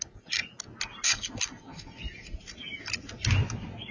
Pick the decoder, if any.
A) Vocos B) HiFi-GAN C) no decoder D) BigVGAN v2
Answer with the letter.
C